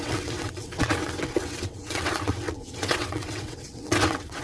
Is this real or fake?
fake